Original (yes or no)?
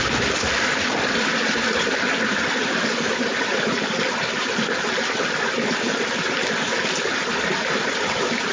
yes